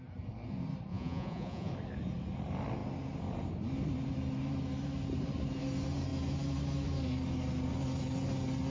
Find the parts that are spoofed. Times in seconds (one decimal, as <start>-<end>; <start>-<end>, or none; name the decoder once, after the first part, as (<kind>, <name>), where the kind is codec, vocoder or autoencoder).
0.9-1.7 (vocoder, Vocos)